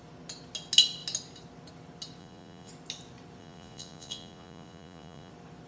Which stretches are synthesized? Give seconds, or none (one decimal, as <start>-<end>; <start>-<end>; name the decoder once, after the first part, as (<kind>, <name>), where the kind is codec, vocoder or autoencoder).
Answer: 2.2-2.7 (vocoder, Vocos); 3.4-5.3